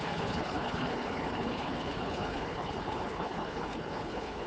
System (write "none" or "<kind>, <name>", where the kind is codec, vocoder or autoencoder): codec, HILCodec